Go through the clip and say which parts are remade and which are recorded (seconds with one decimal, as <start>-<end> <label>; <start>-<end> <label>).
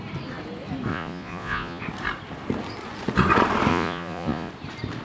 0.0-0.9 recorded; 0.9-1.8 remade; 1.8-3.7 recorded; 3.7-4.5 remade; 4.5-5.0 recorded